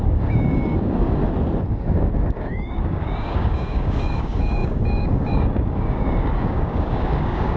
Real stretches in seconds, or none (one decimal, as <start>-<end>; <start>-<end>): 1.2-1.7